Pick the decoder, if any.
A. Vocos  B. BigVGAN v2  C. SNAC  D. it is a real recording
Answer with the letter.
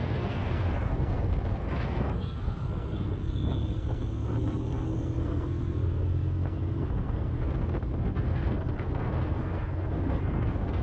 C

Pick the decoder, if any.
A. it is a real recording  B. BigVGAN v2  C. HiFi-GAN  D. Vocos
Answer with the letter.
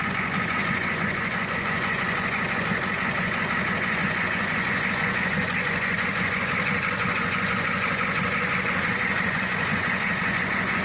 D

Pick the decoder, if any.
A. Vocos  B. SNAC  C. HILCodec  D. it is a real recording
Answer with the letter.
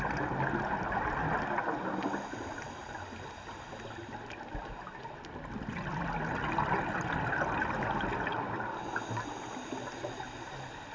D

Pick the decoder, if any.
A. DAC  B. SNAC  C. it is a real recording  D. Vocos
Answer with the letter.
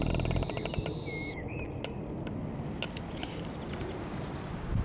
C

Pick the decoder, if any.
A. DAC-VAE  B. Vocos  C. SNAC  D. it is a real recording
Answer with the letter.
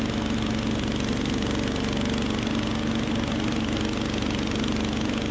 D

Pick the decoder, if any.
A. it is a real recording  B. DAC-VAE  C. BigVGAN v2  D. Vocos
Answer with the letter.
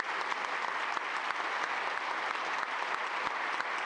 A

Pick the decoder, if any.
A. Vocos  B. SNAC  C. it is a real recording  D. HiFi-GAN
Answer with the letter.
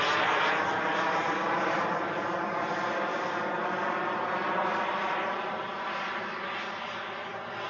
C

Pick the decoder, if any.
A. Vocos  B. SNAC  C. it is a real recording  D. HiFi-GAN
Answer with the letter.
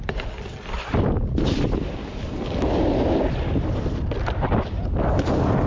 C